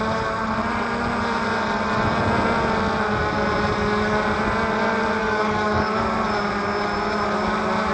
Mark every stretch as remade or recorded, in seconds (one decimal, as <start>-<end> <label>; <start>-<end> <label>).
0.0-5.2 recorded; 5.2-6.0 remade; 6.0-7.9 recorded